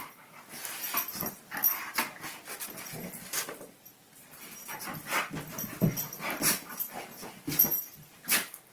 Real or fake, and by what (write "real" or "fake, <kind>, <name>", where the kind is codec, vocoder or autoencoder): real